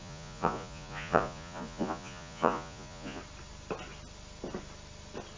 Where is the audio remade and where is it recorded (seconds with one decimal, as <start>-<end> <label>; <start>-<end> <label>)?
0.0-3.2 remade; 3.2-5.4 recorded